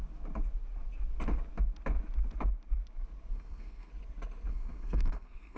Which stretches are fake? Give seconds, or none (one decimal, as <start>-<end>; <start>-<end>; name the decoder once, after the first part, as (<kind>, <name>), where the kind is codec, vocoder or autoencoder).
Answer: 3.3-3.9 (codec, SNAC); 4.5-5.6